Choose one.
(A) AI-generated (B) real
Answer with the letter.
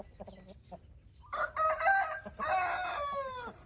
B